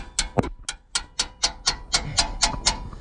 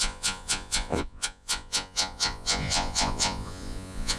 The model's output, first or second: second